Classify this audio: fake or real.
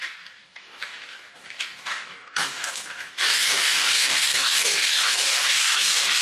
fake